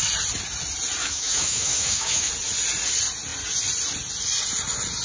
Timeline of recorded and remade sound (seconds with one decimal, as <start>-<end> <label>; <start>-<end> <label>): 0.0-1.0 recorded; 1.0-2.3 remade; 2.3-5.0 recorded